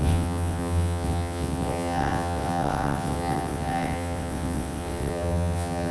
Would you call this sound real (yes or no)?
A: no